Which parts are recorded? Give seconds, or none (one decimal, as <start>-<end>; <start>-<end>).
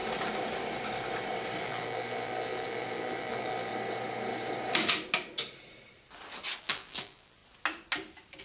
0.0-1.6; 3.7-6.6; 7.4-8.4